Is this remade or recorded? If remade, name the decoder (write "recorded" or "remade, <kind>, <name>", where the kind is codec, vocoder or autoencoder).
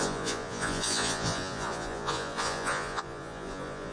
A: remade, vocoder, Vocos